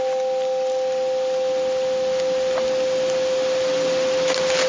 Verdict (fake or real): real